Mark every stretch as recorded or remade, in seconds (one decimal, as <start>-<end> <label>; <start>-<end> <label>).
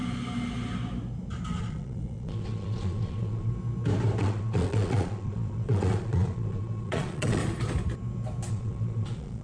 0.0-1.6 recorded; 1.6-3.5 remade; 3.5-4.2 recorded; 4.2-7.4 remade; 7.4-8.5 recorded; 8.5-9.4 remade